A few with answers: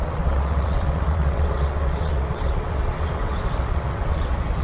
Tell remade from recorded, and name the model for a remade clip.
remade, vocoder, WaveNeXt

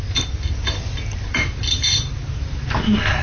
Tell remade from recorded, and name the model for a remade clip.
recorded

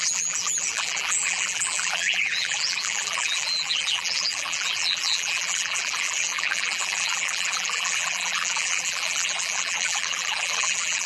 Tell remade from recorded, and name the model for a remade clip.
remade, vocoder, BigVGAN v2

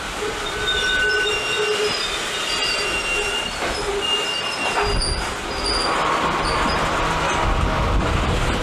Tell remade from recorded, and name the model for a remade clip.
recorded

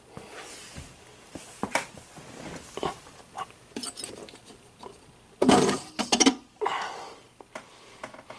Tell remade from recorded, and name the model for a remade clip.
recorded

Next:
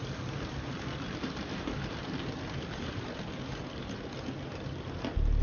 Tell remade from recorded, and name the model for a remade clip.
recorded